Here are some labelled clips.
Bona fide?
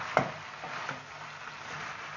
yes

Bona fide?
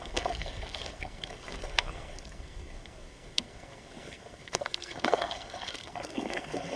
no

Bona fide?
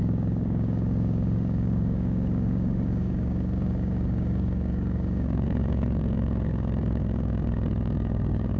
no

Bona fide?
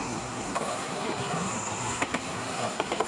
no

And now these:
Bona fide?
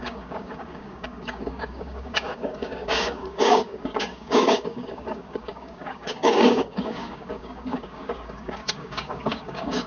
no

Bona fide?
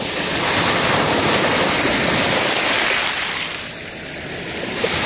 yes